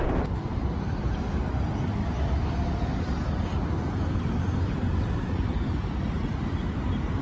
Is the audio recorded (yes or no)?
yes